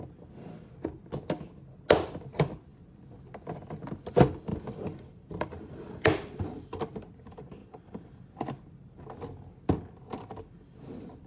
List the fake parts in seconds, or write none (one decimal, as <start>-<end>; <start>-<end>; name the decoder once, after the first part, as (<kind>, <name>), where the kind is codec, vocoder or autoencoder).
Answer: 4.5-6.9 (vocoder, BigVGAN v2); 7.6-8.1